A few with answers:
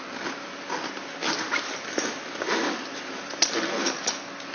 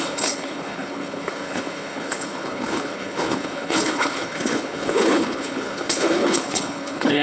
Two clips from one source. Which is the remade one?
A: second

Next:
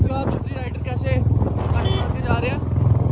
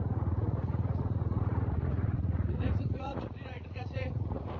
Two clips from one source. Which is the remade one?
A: second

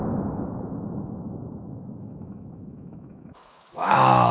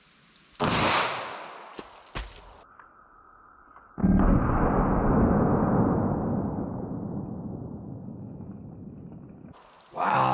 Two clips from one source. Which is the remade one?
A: first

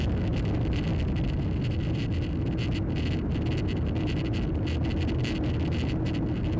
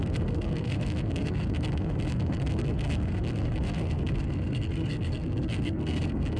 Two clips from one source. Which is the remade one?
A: second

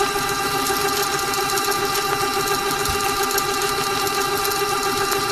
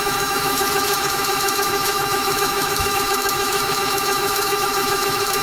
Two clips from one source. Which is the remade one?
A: second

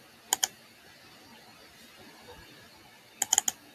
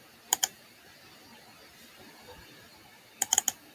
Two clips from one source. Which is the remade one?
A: second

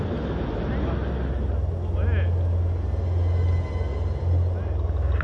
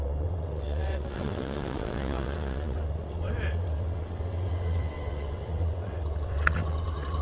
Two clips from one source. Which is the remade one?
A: second